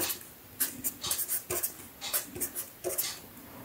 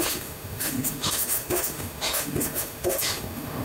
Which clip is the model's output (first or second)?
second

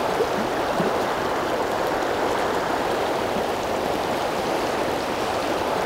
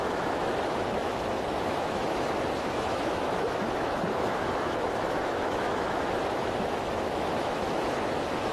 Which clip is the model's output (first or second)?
second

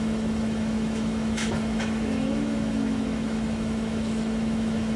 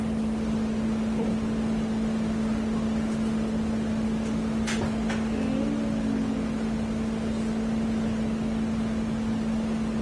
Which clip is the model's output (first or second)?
first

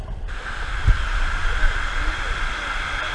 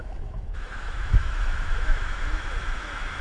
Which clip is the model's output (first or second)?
second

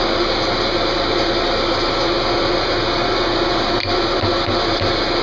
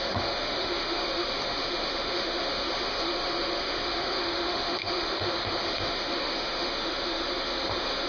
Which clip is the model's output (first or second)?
second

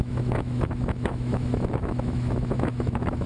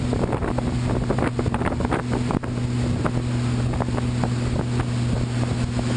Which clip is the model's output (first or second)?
first